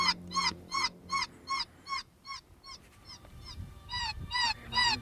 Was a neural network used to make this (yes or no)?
yes